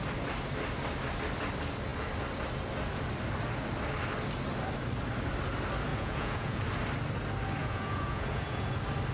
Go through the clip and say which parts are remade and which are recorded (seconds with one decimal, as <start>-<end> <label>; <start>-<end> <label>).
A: 0.0-5.9 recorded; 5.9-6.6 remade; 6.6-7.6 recorded; 7.6-8.7 remade; 8.7-9.1 recorded

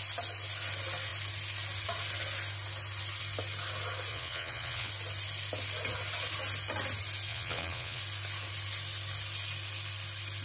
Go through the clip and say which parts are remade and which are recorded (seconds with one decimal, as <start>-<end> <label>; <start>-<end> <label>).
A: 0.0-4.1 recorded; 4.1-4.9 remade; 4.9-7.3 recorded; 7.3-8.0 remade; 8.0-10.4 recorded

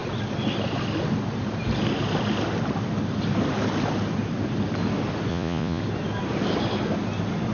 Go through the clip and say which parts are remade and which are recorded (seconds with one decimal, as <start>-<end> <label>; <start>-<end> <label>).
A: 0.0-5.3 recorded; 5.3-5.8 remade; 5.8-7.5 recorded